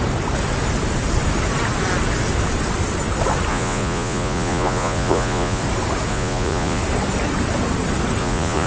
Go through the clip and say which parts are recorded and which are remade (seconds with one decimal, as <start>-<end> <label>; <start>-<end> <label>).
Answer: 0.0-3.5 recorded; 3.5-5.6 remade; 5.6-6.1 recorded; 6.1-6.8 remade; 6.8-8.2 recorded; 8.2-8.7 remade